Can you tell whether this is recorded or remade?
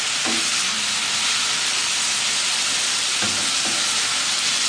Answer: recorded